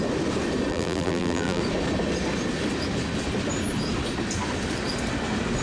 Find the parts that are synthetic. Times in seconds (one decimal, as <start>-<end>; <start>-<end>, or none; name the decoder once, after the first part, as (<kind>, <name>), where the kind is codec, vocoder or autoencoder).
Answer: 0.7-1.6 (vocoder, BigVGAN v2)